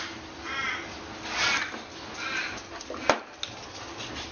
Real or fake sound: real